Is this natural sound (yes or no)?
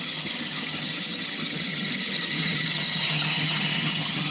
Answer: no